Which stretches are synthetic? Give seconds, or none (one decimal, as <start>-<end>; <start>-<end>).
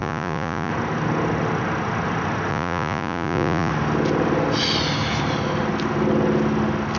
0.0-0.7; 2.5-3.7